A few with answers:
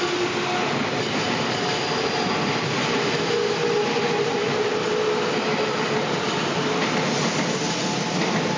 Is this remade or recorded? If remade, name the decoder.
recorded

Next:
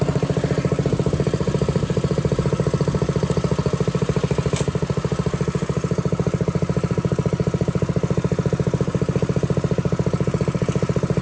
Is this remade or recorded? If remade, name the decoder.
recorded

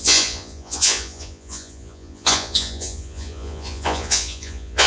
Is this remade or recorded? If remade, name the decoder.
remade, vocoder, Vocos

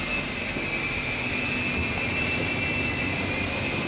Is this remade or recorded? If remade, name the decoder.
recorded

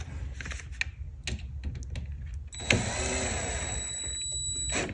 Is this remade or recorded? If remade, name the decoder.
recorded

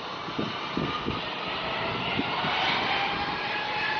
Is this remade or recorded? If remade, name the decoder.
recorded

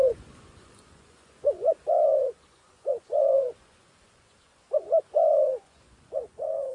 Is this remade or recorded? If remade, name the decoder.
remade, vocoder, Vocos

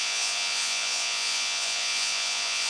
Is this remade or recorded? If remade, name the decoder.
remade, vocoder, Vocos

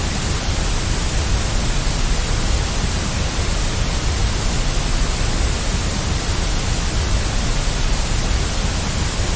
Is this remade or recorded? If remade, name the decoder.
recorded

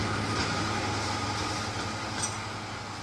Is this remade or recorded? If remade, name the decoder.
recorded